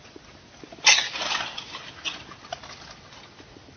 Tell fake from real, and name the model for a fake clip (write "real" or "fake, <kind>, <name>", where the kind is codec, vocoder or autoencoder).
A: real